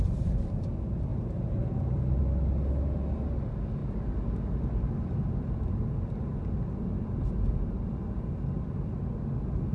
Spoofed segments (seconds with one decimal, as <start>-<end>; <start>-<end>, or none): 1.1-2.2